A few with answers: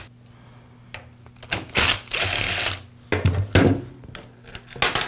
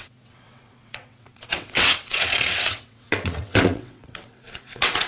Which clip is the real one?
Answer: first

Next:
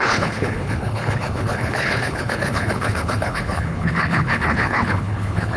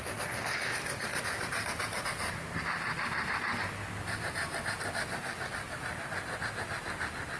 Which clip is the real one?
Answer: second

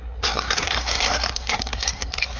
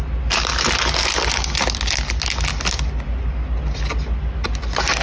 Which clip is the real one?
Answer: second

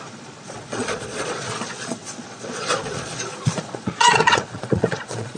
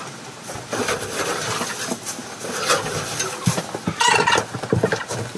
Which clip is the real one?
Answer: second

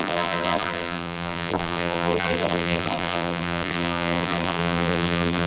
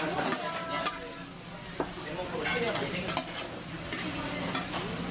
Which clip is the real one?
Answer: second